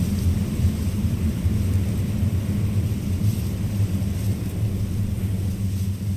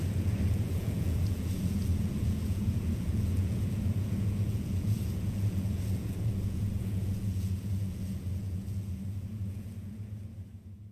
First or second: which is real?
first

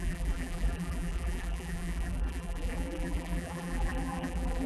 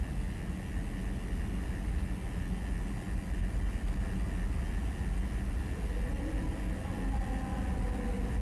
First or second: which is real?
second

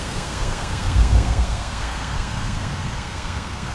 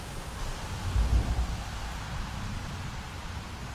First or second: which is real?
second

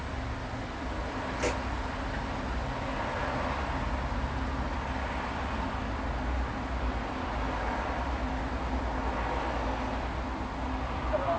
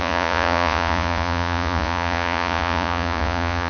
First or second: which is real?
first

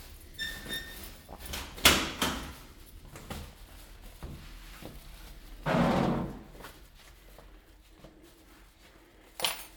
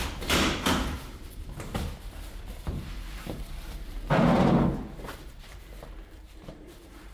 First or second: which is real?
first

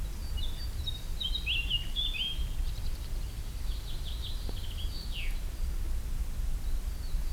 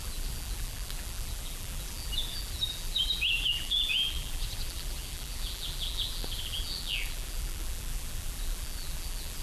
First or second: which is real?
first